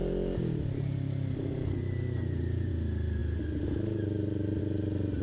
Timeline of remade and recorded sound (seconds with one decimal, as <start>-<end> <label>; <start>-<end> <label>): 0.0-2.2 recorded; 2.2-2.7 remade; 2.7-5.2 recorded